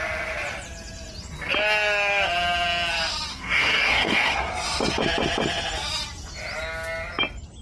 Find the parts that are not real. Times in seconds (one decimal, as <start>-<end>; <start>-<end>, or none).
3.3-4.5